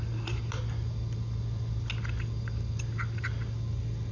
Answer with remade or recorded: recorded